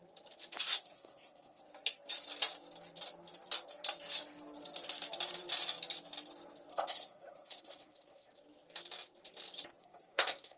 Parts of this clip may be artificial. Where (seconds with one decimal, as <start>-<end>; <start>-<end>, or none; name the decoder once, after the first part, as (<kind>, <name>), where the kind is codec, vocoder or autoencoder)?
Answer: 0.7-1.6 (codec, SNAC); 6.7-8.3; 9.8-10.6